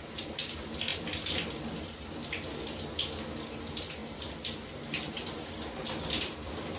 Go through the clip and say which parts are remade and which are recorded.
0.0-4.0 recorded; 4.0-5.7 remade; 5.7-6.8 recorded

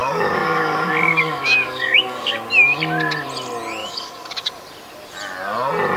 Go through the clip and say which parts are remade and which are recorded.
0.0-2.5 remade; 2.5-3.8 recorded; 3.8-4.5 remade; 4.5-6.0 recorded

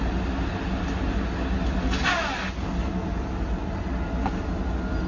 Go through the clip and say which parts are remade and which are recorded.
0.0-5.1 recorded

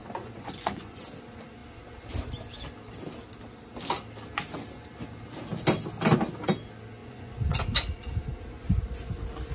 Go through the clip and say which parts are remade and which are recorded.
0.0-1.0 remade; 1.0-7.0 recorded; 7.0-7.6 remade; 7.6-9.5 recorded

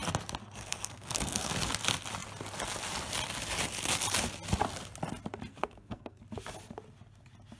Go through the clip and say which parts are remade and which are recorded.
0.0-0.4 recorded; 0.4-1.5 remade; 1.5-5.5 recorded; 5.5-6.2 remade; 6.2-7.6 recorded

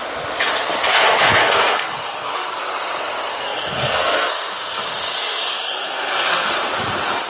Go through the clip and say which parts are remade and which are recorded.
0.0-0.9 recorded; 0.9-2.6 remade; 2.6-3.3 recorded; 3.3-6.5 remade; 6.5-7.3 recorded